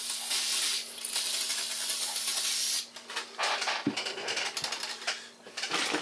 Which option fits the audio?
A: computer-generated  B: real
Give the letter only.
B